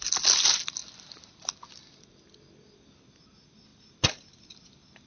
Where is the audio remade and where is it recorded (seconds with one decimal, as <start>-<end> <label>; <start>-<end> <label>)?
0.0-5.1 recorded